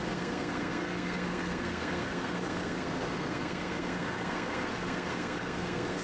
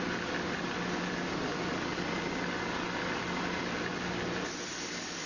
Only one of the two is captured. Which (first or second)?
second